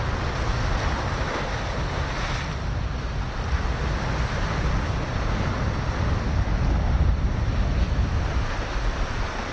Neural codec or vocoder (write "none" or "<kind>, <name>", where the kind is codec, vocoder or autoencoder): none